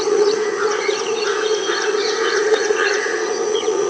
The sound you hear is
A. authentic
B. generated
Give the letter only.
B